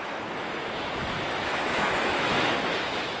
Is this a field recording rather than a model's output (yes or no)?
no